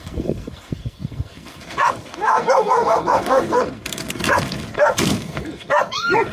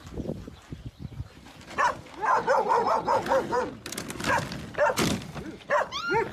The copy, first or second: first